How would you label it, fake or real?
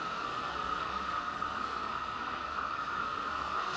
fake